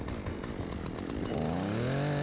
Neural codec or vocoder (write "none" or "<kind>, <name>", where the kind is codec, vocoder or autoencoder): none